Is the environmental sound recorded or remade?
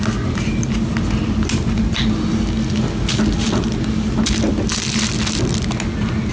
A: recorded